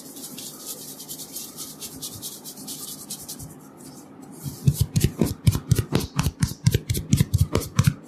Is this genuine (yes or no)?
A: no